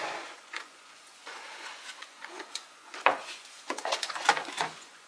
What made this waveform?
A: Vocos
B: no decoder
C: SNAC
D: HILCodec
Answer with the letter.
A